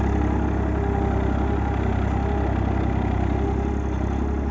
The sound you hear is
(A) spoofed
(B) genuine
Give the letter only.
B